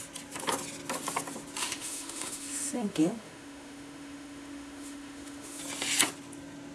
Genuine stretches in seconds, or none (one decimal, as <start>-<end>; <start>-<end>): 0.0-1.6; 5.6-6.7